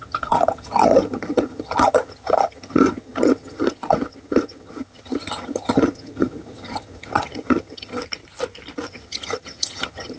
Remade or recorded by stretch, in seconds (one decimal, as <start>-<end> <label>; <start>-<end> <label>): 0.0-8.0 remade; 8.0-8.9 recorded; 8.9-10.2 remade